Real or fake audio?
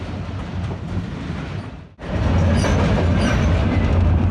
real